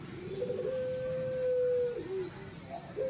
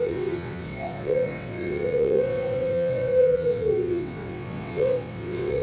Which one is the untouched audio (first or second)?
first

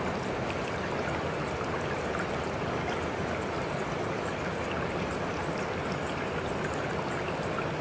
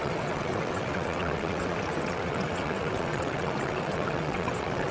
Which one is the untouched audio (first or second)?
first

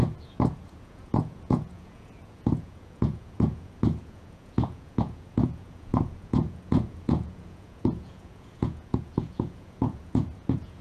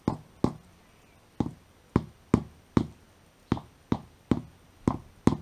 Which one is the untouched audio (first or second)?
second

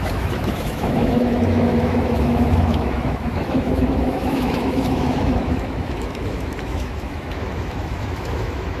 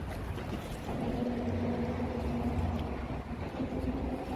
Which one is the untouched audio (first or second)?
second